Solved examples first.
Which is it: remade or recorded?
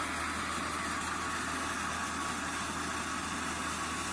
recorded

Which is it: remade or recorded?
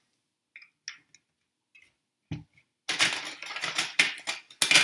recorded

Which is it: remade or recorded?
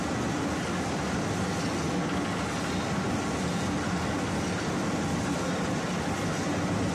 recorded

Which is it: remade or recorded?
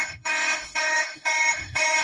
remade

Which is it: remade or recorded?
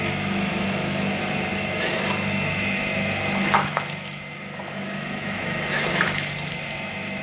remade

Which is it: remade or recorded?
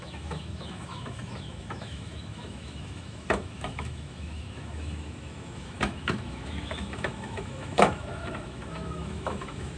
remade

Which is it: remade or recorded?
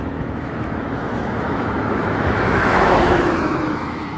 remade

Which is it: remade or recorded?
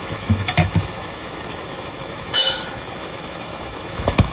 remade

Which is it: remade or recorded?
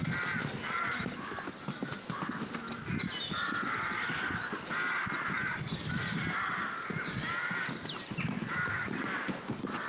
recorded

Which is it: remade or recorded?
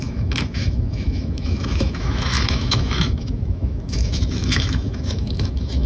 remade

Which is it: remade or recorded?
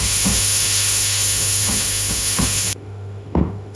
remade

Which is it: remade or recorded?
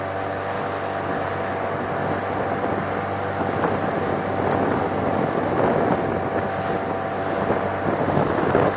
recorded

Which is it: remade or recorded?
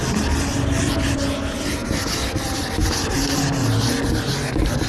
recorded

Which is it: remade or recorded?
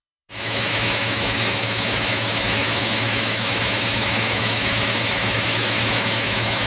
remade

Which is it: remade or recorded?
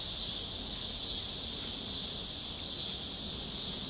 recorded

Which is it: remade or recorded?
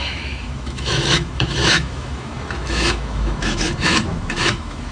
remade